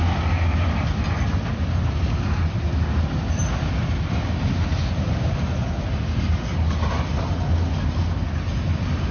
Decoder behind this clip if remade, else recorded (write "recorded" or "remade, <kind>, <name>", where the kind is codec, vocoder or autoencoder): recorded